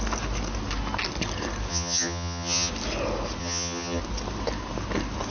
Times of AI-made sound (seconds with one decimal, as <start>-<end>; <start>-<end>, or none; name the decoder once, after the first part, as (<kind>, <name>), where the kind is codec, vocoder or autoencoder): 1.7-2.7 (vocoder, HiFi-GAN); 3.4-4.0